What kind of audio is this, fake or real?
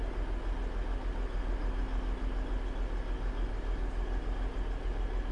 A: real